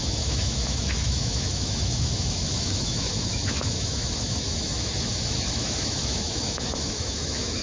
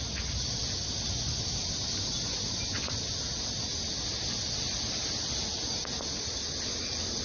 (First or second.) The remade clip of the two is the first